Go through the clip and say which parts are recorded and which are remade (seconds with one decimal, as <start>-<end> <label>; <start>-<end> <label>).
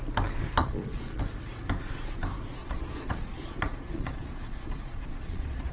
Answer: 0.0-0.6 recorded; 0.6-1.2 remade; 1.2-2.6 recorded; 2.6-5.7 remade